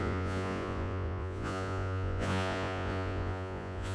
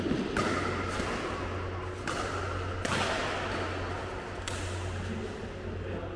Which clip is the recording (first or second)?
second